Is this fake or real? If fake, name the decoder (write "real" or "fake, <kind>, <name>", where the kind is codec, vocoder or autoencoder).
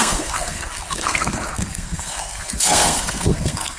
fake, codec, SNAC